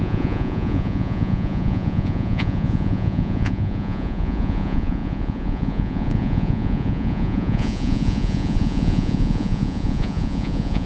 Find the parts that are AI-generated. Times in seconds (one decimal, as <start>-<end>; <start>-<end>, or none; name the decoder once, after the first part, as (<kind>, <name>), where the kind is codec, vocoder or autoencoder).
0.0-10.9 (vocoder, Vocos)